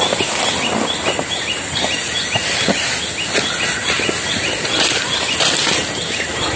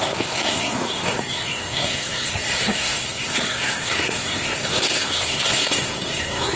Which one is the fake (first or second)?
second